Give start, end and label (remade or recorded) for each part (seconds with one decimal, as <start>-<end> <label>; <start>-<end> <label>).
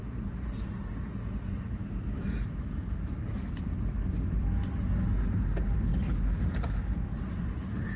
0.0-8.0 recorded